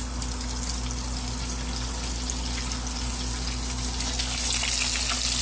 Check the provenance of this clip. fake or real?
real